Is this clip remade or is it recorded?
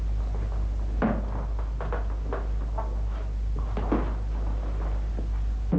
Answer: recorded